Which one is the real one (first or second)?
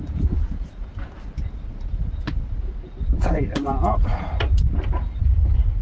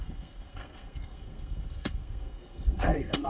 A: first